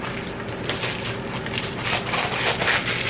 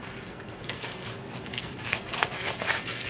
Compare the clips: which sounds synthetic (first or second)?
second